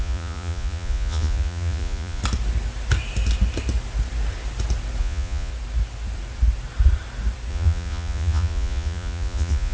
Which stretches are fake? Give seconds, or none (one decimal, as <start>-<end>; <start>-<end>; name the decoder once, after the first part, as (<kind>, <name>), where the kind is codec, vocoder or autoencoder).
0.0-2.2 (vocoder, Vocos); 5.0-5.5; 7.5-9.7